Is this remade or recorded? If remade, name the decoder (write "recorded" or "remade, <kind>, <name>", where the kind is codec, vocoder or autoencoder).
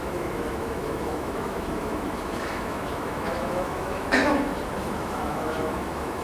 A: remade, autoencoder, DAC-VAE